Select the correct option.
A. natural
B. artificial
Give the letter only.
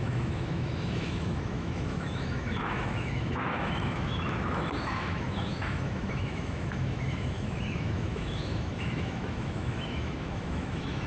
B